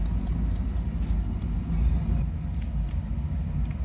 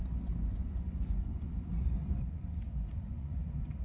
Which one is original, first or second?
first